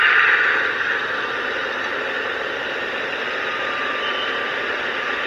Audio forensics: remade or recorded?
recorded